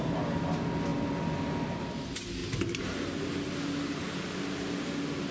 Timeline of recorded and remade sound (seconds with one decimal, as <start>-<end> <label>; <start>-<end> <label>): 0.0-2.4 recorded; 2.4-3.3 remade; 3.3-5.3 recorded